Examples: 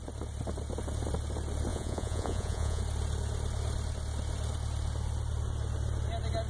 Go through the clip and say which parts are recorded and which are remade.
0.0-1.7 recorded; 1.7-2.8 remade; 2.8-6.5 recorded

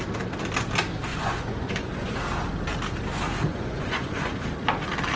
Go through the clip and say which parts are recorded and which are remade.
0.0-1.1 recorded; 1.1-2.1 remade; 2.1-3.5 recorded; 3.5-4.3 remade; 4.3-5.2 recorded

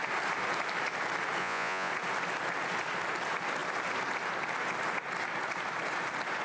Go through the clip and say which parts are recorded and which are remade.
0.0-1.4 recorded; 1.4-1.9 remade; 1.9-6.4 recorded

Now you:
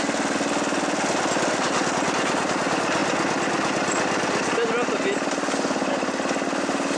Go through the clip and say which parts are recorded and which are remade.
0.0-7.0 recorded

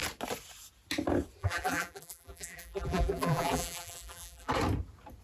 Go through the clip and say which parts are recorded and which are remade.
0.0-1.4 recorded; 1.4-4.5 remade; 4.5-5.2 recorded

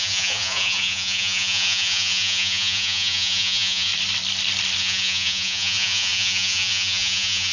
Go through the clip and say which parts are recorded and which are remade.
0.0-3.9 remade; 3.9-4.8 recorded; 4.8-7.5 remade

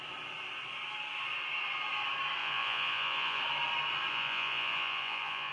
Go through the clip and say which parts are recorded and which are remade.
0.0-2.4 recorded; 2.4-3.4 remade; 3.4-4.1 recorded; 4.1-5.5 remade